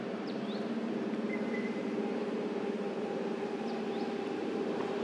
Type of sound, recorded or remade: remade